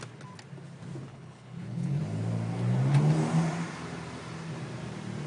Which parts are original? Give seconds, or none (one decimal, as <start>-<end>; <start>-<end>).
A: 0.0-1.1; 2.0-5.3